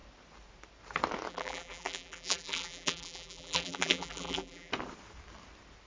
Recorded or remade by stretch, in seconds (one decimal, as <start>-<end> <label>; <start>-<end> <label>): 0.0-1.3 recorded; 1.3-4.7 remade; 4.7-5.9 recorded